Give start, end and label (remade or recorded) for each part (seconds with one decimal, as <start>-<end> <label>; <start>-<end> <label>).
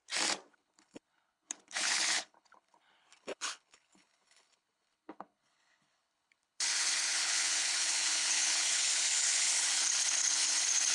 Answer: 0.0-0.5 recorded; 0.5-10.9 remade